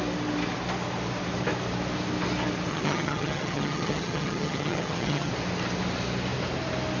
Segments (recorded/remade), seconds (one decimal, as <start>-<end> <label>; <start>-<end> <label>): 0.0-2.7 recorded; 2.7-5.3 remade; 5.3-7.0 recorded

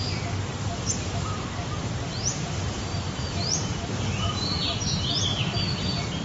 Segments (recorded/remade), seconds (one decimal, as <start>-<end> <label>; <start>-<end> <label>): 0.0-1.6 recorded; 1.6-2.4 remade; 2.4-2.9 recorded; 2.9-4.8 remade; 4.8-6.2 recorded

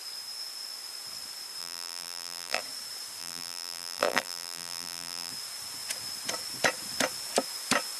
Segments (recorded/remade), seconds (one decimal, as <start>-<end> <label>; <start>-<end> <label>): 0.0-1.6 recorded; 1.6-2.6 remade; 2.6-3.2 recorded; 3.2-5.3 remade; 5.3-8.0 recorded

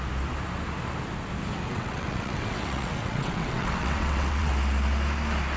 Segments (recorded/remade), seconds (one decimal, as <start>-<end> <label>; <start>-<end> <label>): 0.0-1.7 recorded; 1.7-4.5 remade; 4.5-5.6 recorded

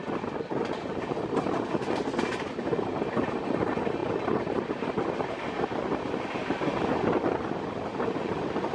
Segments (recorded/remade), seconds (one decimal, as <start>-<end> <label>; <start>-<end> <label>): 0.0-8.7 recorded

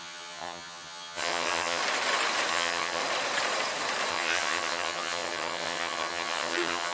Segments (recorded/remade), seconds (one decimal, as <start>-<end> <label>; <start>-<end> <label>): 0.0-1.8 remade; 1.8-2.5 recorded; 2.5-3.0 remade; 3.0-4.1 recorded; 4.1-6.9 remade